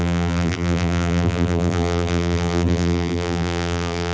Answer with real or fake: fake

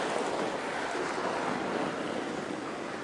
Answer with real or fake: real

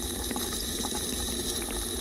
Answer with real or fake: fake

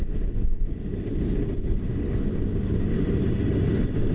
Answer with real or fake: real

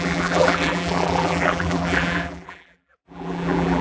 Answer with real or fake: fake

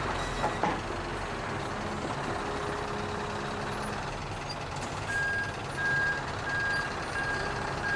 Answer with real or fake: real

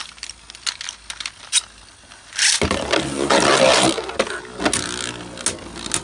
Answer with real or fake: real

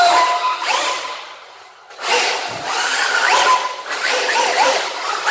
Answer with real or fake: fake